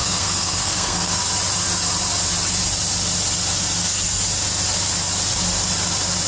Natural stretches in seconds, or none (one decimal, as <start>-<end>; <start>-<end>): 1.2-6.3